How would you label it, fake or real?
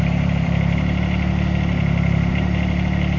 fake